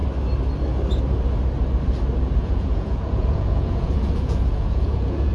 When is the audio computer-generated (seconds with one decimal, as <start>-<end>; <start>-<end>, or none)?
2.4-5.3

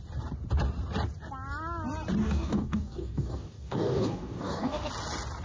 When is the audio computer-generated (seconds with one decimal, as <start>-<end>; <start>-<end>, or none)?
2.2-4.9